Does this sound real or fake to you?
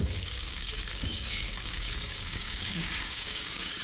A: fake